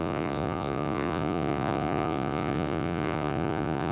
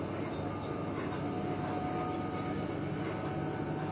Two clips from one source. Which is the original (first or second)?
second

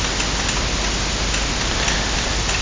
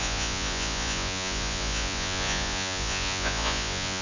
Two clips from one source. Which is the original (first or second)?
first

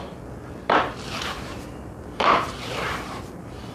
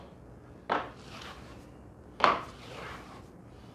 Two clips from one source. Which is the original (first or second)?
second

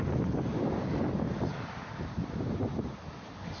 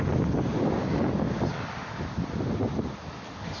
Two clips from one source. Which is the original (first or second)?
second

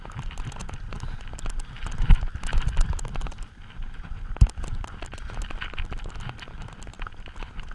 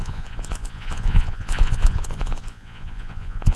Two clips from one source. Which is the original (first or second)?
first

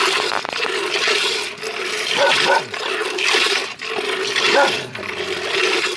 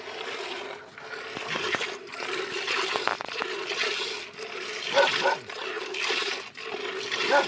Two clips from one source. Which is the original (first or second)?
second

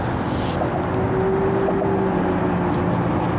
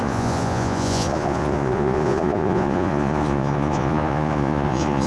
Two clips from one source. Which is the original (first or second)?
first